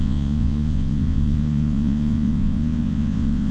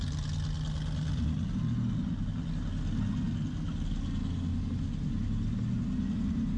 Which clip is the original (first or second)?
second